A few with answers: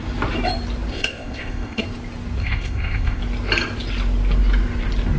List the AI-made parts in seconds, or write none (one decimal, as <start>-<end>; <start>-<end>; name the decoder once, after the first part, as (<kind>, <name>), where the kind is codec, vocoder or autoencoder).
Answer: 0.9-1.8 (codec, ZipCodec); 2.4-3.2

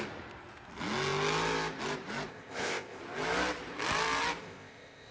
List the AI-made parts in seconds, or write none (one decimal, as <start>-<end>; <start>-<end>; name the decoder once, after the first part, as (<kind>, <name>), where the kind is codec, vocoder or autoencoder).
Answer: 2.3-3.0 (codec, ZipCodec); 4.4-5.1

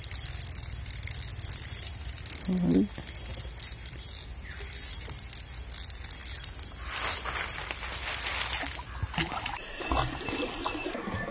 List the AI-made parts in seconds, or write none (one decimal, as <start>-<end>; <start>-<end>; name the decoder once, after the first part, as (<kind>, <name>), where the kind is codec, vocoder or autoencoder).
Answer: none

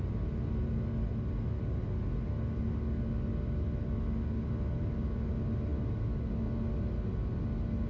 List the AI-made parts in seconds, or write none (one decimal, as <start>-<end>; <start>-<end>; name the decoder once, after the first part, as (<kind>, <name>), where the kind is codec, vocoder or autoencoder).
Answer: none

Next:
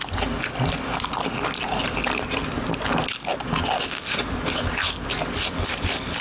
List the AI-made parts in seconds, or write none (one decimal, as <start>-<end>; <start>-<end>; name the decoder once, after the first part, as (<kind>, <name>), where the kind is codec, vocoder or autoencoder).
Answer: none

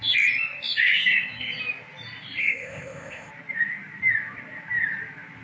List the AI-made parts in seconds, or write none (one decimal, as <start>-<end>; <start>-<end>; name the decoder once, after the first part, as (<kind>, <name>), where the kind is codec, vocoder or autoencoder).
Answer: 2.4-3.3 (codec, ZipCodec)